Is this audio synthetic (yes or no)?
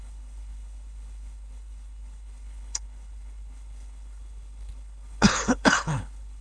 yes